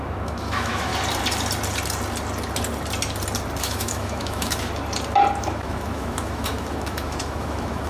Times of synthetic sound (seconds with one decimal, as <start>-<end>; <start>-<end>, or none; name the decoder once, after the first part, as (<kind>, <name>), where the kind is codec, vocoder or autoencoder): 0.0-0.9 (autoencoder, DAC-VAE); 3.6-4.7; 5.4-7.9